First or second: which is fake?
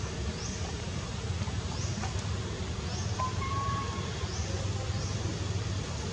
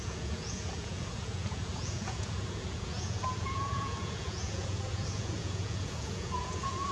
second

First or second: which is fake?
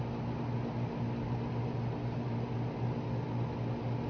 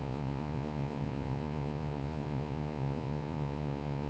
second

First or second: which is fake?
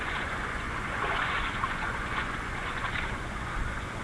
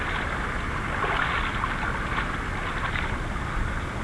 first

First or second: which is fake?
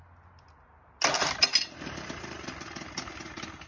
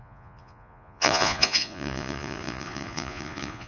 second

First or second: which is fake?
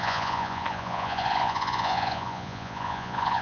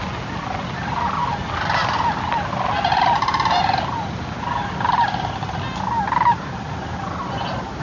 first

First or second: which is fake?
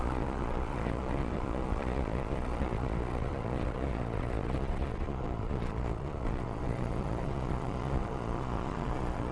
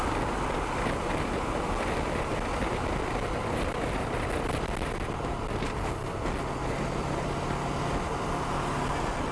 first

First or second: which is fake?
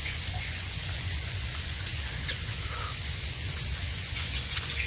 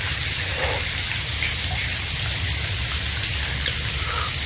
first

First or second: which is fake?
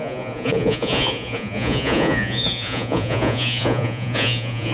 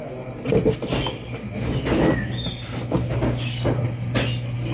first